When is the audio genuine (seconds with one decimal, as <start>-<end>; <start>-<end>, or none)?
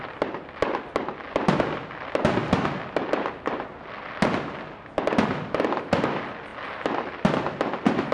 0.0-8.1